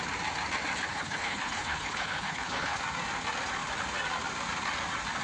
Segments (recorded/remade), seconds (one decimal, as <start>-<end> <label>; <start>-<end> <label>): 0.0-0.9 recorded; 0.9-2.8 remade; 2.8-5.2 recorded